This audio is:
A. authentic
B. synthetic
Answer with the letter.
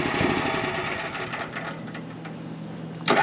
A